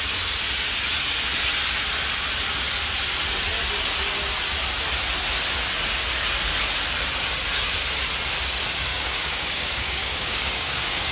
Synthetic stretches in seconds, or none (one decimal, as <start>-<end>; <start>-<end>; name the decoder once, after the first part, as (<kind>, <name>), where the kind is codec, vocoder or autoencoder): 8.9-11.1 (codec, DAC)